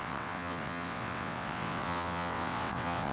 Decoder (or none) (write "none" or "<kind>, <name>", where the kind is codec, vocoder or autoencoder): vocoder, WaveNeXt